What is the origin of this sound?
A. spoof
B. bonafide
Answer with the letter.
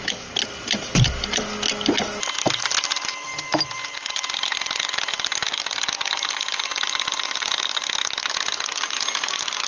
B